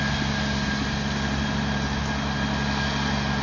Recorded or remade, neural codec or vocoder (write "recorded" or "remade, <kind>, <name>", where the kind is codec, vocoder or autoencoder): recorded